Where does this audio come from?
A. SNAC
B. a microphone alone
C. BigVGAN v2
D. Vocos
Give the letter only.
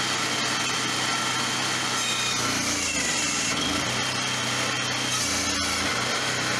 B